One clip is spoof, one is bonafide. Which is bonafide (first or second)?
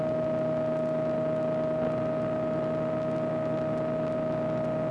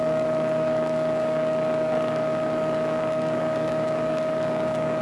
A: first